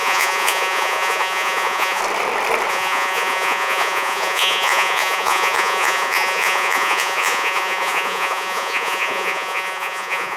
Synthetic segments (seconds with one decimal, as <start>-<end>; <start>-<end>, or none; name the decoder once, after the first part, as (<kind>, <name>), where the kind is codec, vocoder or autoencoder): 0.0-2.0 (vocoder, Vocos); 2.7-10.4